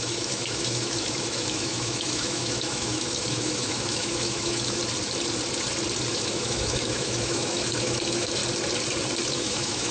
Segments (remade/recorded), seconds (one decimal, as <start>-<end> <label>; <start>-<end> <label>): 0.0-4.8 remade; 4.8-6.1 recorded; 6.1-8.4 remade; 8.4-9.3 recorded; 9.3-9.9 remade